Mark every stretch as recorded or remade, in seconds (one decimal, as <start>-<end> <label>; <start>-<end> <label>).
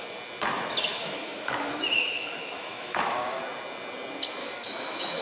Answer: 0.0-0.9 recorded; 0.9-3.4 remade; 3.4-4.4 recorded; 4.4-5.2 remade